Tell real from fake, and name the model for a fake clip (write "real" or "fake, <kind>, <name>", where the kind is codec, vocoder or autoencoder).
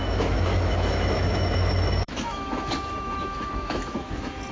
fake, autoencoder, DAC-VAE